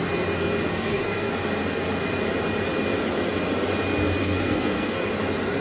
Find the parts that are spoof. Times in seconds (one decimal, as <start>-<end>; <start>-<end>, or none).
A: 0.7-1.3; 4.2-5.1